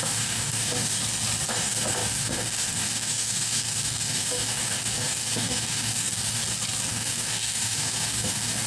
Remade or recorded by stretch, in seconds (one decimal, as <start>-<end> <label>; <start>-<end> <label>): 0.0-1.0 remade; 1.0-1.5 recorded; 1.5-6.4 remade; 6.4-6.9 recorded; 6.9-8.7 remade